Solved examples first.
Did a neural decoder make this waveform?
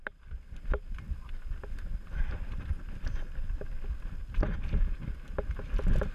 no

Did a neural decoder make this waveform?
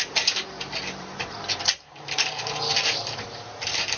yes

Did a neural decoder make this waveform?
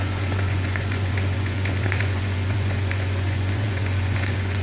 yes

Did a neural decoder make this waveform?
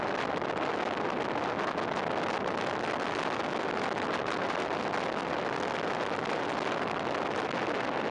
no